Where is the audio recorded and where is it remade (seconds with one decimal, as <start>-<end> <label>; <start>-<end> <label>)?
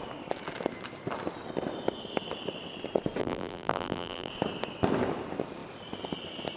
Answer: 0.0-3.2 recorded; 3.2-4.3 remade; 4.3-6.6 recorded